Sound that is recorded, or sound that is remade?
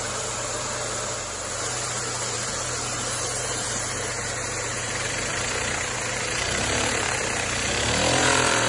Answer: remade